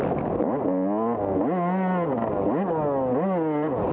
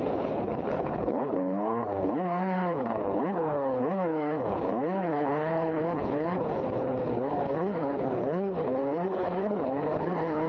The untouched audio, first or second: first